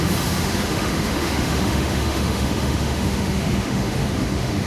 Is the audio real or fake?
fake